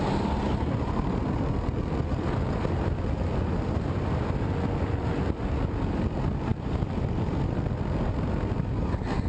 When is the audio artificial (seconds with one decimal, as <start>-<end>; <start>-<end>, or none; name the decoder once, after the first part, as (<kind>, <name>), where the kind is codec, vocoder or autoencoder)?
none